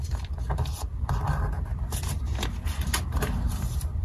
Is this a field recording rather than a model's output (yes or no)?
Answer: yes